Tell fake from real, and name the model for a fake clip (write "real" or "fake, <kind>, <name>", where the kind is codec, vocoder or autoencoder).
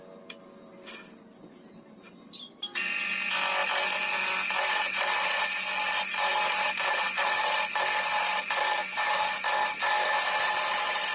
real